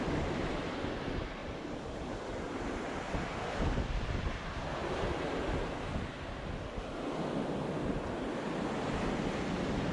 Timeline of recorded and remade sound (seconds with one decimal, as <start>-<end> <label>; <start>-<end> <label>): 0.0-1.4 recorded; 1.4-2.1 remade; 2.1-9.9 recorded